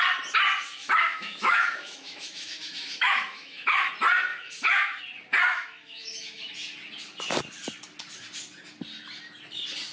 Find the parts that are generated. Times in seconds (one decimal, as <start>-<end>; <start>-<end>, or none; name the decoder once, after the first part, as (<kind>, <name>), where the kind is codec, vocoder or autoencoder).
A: 0.8-3.9 (autoencoder, DAC-VAE); 4.3-5.0; 5.5-6.5